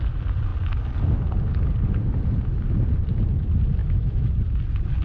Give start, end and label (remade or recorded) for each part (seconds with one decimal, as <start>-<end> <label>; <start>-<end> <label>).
0.0-3.8 recorded; 3.8-4.3 remade; 4.3-5.0 recorded